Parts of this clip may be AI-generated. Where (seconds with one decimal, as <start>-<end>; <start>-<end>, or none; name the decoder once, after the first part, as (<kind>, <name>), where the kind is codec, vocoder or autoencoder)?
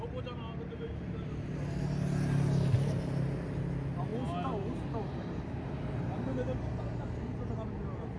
none